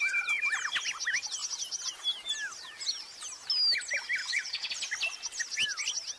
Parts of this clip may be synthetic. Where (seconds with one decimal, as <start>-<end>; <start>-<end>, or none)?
4.2-4.7